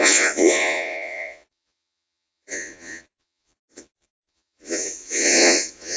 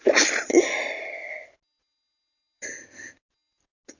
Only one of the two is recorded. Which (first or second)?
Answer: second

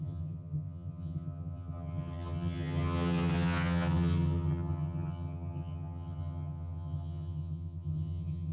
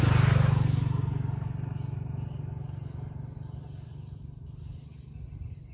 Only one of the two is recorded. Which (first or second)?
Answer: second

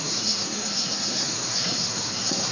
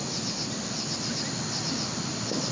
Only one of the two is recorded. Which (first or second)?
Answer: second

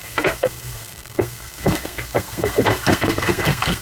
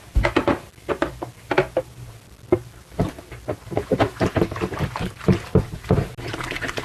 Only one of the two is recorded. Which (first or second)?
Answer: second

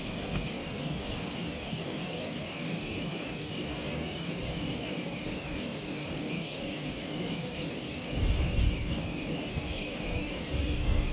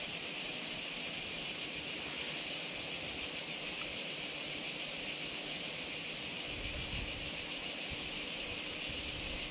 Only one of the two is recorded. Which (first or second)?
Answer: second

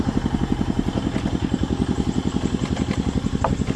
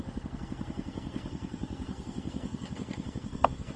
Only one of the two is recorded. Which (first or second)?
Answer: first